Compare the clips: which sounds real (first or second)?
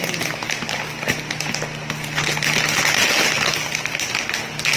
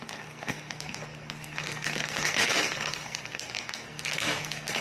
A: first